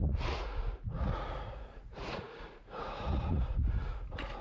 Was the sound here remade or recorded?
remade